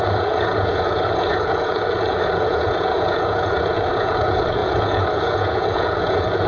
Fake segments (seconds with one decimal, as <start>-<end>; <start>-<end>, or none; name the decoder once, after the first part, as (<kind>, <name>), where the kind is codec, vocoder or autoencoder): 0.0-6.5 (vocoder, Vocos)